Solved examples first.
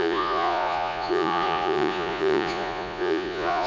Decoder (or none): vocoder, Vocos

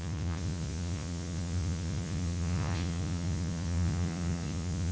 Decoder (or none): vocoder, Vocos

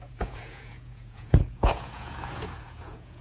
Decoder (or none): vocoder, Vocos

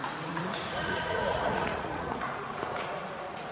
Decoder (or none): vocoder, Vocos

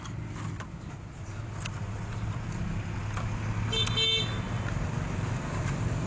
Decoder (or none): none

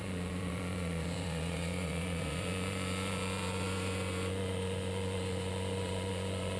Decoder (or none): vocoder, Vocos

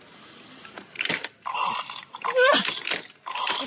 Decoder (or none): none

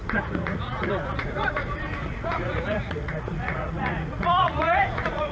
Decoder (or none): vocoder, Vocos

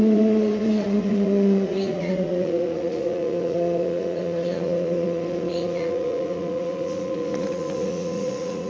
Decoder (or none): vocoder, Vocos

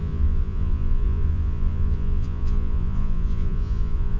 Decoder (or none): vocoder, Vocos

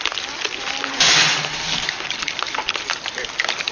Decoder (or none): none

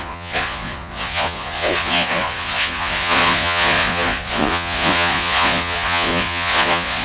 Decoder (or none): vocoder, Vocos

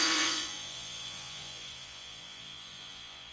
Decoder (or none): vocoder, Vocos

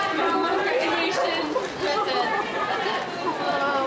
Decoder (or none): none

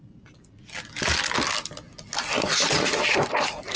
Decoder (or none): none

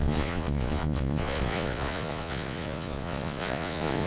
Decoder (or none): vocoder, Vocos